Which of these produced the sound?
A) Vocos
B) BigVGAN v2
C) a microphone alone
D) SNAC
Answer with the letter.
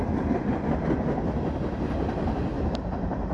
C